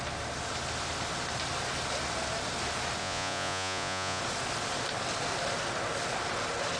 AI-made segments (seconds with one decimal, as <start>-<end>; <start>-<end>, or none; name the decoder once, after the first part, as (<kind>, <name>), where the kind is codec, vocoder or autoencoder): 3.0-4.2 (vocoder, Vocos)